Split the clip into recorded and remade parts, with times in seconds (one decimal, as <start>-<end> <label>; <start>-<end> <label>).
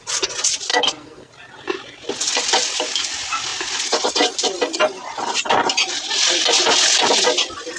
0.0-0.7 recorded; 0.7-1.3 remade; 1.3-7.8 recorded